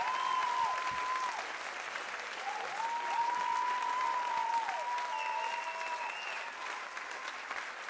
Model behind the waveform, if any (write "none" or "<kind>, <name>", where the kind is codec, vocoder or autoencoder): none